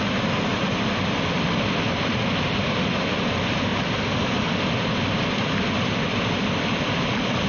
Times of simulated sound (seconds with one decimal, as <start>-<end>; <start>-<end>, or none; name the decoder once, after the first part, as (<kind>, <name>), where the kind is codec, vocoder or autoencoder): none